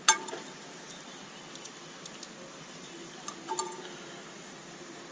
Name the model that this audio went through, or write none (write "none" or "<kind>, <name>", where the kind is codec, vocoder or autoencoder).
none